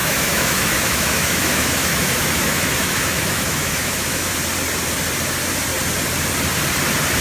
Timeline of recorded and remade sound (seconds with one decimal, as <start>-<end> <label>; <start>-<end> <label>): 0.0-4.3 remade; 4.3-7.2 recorded

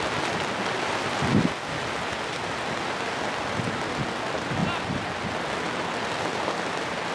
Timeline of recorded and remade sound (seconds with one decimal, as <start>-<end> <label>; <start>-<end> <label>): 0.0-7.1 recorded